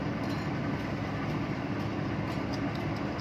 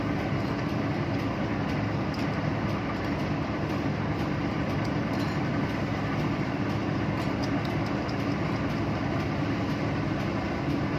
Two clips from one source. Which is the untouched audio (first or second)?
first